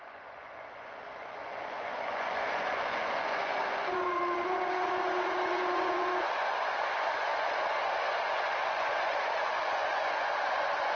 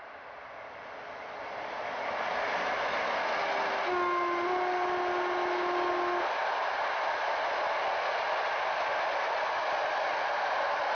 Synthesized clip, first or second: first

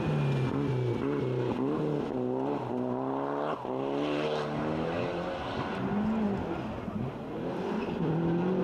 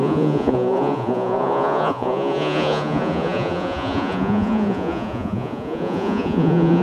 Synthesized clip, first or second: second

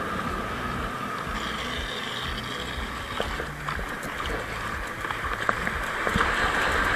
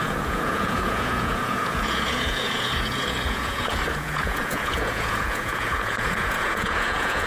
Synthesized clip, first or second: second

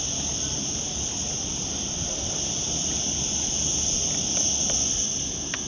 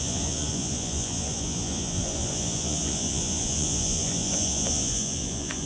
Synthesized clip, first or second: second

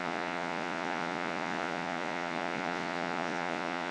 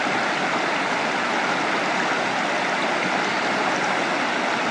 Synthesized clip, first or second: first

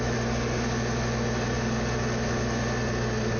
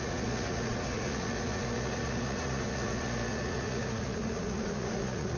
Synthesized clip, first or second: second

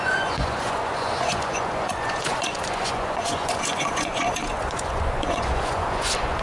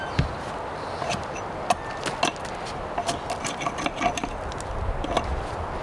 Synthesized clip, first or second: first